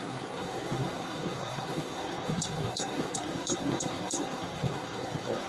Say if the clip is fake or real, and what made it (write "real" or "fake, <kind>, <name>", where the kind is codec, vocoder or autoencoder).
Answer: fake, codec, SNAC